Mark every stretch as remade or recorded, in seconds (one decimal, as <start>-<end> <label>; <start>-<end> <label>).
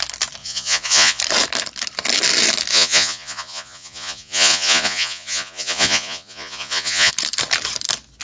0.0-0.4 recorded; 0.4-1.2 remade; 1.2-2.7 recorded; 2.7-7.1 remade; 7.1-8.2 recorded